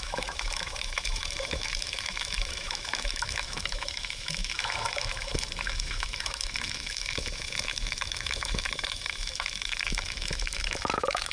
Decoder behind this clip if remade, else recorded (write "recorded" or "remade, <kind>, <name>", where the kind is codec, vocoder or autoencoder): remade, autoencoder, DAC-VAE